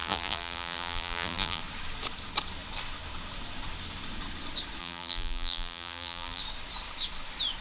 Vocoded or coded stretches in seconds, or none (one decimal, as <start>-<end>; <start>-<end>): 0.0-1.6; 4.8-6.4